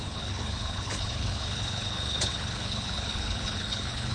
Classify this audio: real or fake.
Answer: fake